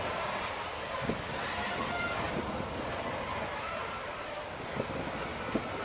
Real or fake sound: real